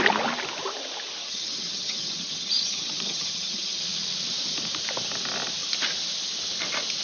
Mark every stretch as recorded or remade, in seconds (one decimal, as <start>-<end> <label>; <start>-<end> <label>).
0.0-1.2 recorded; 1.2-3.8 remade; 3.8-7.0 recorded